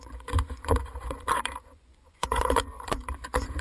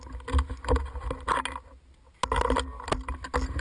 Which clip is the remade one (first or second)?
first